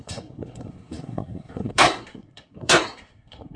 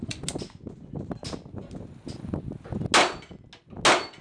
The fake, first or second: first